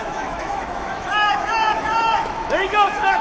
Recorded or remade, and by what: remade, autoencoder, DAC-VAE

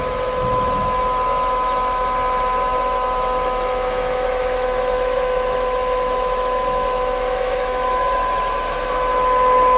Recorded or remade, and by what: remade, autoencoder, DAC-VAE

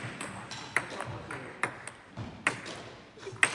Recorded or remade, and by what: recorded